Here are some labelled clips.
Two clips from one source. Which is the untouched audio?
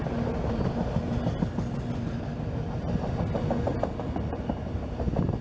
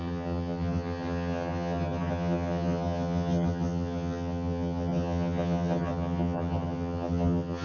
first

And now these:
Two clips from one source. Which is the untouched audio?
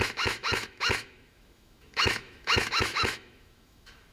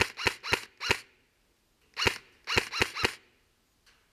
second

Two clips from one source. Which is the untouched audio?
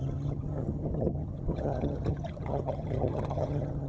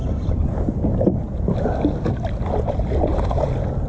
second